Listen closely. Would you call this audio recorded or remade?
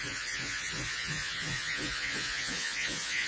remade